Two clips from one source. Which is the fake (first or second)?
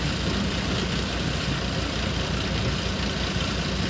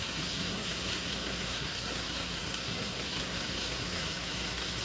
second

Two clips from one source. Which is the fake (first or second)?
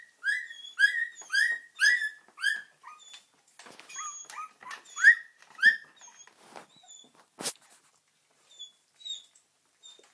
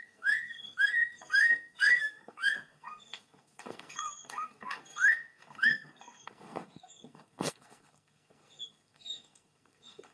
second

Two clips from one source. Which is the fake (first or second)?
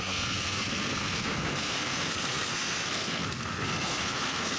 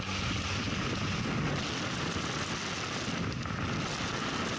first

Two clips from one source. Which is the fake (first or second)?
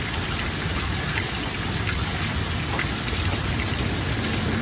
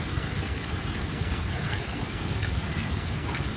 second